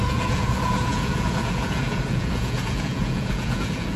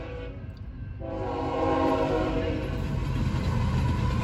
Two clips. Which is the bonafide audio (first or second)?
second